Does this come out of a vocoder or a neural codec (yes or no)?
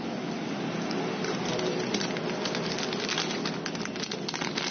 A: no